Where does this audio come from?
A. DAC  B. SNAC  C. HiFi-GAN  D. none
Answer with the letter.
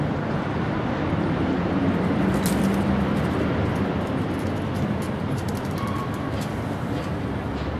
D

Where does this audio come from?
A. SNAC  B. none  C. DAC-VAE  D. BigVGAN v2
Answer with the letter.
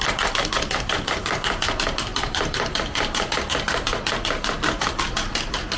B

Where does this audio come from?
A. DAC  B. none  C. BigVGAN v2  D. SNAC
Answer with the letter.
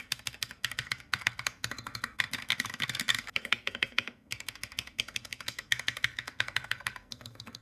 D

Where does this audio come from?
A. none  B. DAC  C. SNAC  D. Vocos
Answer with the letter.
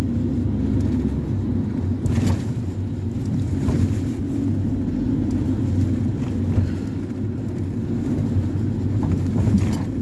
A